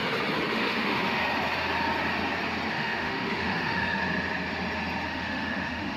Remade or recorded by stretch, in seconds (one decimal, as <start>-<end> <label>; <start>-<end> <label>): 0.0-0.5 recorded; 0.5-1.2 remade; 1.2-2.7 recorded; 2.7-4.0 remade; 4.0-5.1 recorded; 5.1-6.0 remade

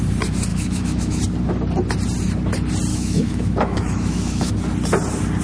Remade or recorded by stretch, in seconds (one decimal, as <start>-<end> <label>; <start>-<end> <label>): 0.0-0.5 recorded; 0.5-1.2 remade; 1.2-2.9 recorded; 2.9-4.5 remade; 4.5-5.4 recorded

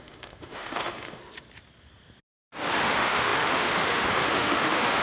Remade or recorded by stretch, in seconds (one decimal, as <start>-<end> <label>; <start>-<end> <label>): 0.0-1.2 remade; 1.2-2.8 recorded; 2.8-5.0 remade

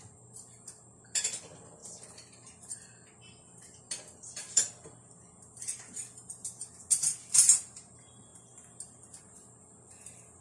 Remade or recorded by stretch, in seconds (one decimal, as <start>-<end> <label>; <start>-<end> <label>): 0.0-10.4 recorded

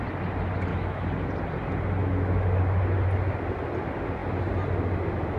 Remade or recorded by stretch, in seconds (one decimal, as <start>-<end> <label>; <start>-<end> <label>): 0.0-0.7 recorded; 0.7-1.3 remade; 1.3-2.0 recorded; 2.0-2.6 remade; 2.6-5.4 recorded

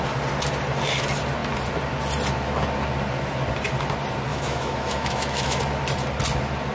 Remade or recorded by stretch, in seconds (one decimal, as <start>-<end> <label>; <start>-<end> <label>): 0.0-4.3 recorded; 4.3-5.6 remade; 5.6-6.7 recorded

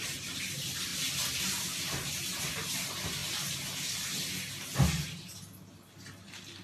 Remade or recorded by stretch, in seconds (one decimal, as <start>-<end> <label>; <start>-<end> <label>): 0.0-6.6 recorded

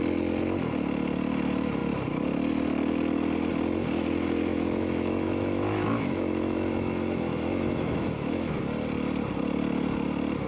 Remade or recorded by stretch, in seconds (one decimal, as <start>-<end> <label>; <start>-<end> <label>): 0.0-4.5 recorded; 4.5-8.6 remade; 8.6-10.5 recorded